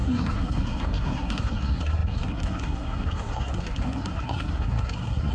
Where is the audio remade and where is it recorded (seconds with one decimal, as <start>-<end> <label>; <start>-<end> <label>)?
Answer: 0.0-5.3 remade